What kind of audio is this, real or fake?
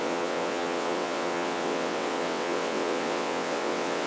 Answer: fake